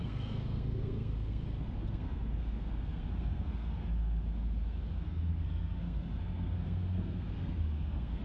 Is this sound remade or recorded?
remade